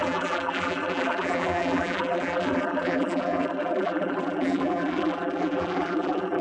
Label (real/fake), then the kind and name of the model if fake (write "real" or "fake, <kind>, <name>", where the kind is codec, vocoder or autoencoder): fake, vocoder, BigVGAN v2